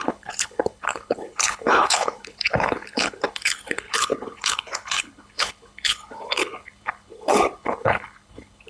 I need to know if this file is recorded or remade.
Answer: remade